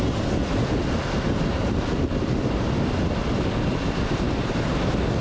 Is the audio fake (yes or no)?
no